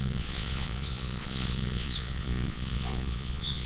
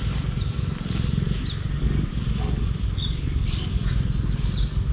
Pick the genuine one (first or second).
second